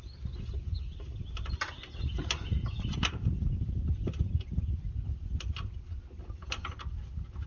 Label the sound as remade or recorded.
recorded